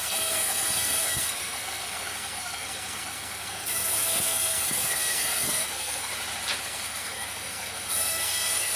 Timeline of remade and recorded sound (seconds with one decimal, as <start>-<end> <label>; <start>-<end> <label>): 0.0-6.1 remade; 6.1-6.6 recorded; 6.6-8.8 remade